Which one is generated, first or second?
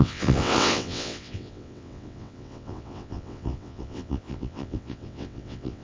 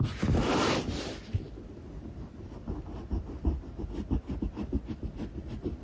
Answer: first